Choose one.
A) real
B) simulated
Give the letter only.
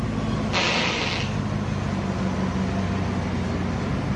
A